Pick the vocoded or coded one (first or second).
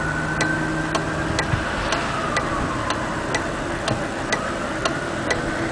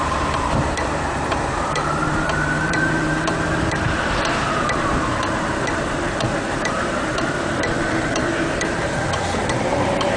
second